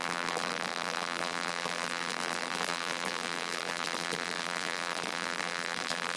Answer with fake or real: fake